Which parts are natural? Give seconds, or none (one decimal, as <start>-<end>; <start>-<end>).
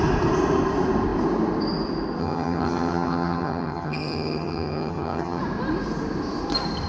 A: 0.0-2.2; 5.4-6.9